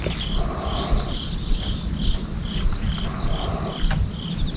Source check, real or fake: real